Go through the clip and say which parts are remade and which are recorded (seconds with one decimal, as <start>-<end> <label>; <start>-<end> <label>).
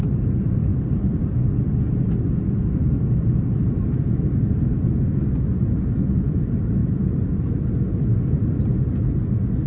0.0-9.7 recorded